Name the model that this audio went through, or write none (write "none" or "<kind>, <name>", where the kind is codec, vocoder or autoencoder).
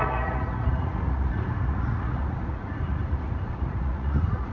vocoder, Vocos